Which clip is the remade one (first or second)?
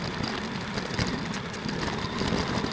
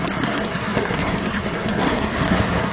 second